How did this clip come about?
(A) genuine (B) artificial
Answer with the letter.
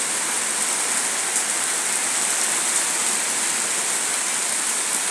A